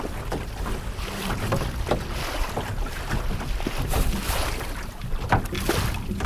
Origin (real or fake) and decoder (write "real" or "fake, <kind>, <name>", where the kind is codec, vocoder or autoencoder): real